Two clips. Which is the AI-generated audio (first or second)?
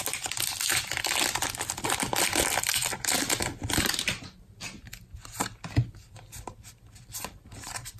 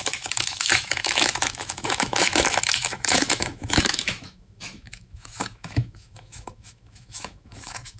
second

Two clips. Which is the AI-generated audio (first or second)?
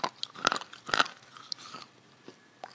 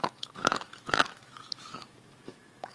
second